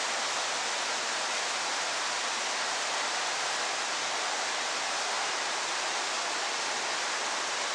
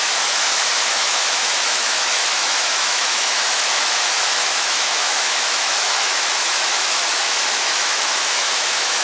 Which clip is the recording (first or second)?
first